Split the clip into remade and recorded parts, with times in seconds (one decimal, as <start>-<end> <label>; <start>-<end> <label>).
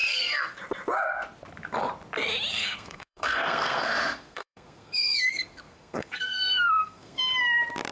0.0-0.6 remade; 0.6-2.5 recorded; 2.5-7.2 remade; 7.2-7.9 recorded